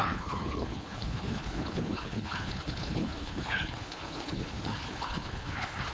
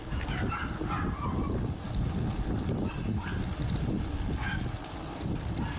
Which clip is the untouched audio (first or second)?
second